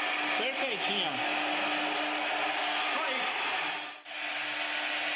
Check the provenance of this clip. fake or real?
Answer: real